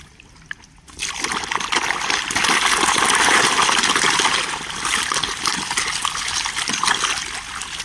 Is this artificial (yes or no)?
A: no